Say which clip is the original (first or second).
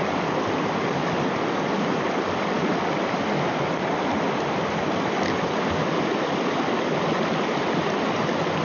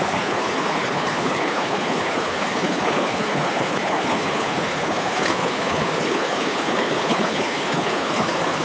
first